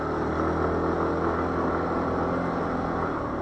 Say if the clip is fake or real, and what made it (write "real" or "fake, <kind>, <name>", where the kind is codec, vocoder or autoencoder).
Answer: real